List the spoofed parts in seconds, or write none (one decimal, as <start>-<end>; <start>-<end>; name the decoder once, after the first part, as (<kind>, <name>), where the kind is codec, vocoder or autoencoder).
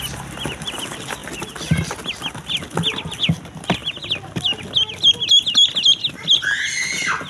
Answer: none